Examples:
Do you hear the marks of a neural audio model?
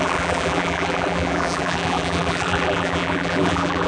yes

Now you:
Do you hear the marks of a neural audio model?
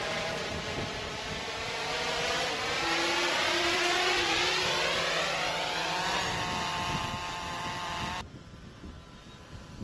no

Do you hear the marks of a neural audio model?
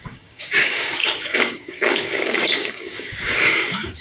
yes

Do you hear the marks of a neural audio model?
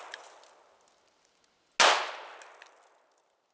no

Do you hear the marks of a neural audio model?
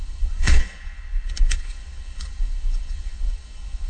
yes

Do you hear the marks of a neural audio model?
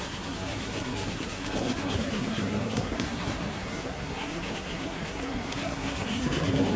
yes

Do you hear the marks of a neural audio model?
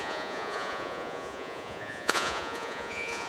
yes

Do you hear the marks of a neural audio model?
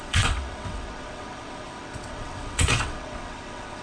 yes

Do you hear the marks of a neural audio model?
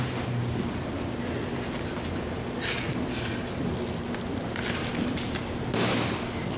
no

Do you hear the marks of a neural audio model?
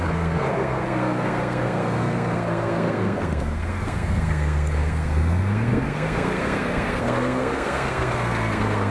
yes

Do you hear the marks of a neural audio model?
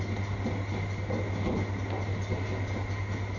no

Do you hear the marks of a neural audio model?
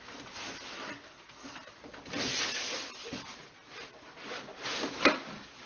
no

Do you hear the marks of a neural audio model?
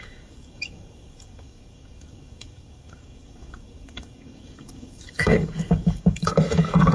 yes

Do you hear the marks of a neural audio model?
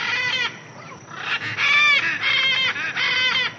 no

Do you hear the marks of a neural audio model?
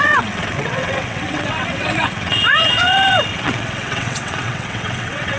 yes